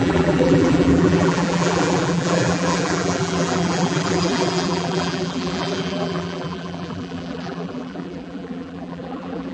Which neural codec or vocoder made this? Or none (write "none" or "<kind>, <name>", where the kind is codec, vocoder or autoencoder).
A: vocoder, BigVGAN v2